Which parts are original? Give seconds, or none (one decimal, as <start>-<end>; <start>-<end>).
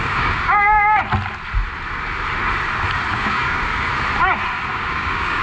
1.0-3.1; 3.9-4.7